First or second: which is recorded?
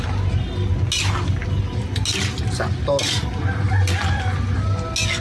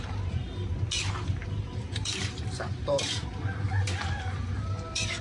first